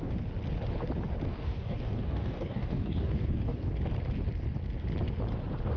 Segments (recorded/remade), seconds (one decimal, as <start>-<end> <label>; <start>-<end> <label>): 0.0-1.3 recorded; 1.3-3.7 remade; 3.7-5.8 recorded